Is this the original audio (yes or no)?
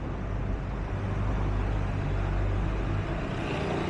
yes